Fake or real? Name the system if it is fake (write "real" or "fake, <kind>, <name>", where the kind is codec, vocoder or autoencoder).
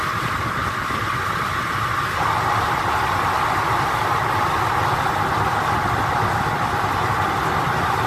real